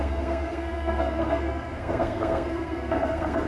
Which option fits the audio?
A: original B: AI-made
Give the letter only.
B